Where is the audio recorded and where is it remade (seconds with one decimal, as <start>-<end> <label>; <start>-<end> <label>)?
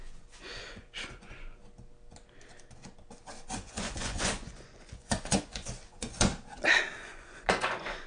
0.0-1.6 remade; 1.6-3.5 recorded; 3.5-6.3 remade; 6.3-7.0 recorded; 7.0-8.1 remade